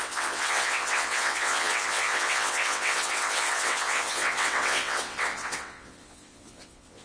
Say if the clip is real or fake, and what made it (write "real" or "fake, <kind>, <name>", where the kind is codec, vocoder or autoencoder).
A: fake, vocoder, WaveNeXt